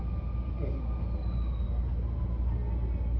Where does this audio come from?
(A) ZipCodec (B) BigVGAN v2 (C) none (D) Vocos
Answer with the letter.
C